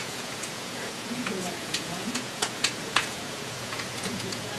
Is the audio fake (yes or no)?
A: yes